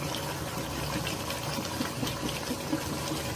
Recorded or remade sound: recorded